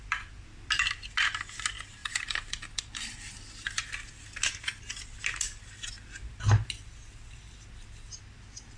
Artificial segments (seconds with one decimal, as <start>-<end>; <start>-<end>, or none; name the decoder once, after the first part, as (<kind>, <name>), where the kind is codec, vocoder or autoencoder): 2.0-3.8 (vocoder, BigVGAN v2)